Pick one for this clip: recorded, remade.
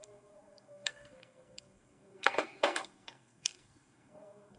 remade